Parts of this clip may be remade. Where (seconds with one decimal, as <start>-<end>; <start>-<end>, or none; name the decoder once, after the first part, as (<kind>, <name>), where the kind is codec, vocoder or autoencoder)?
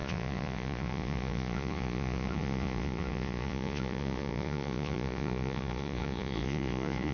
0.0-7.1 (vocoder, Vocos)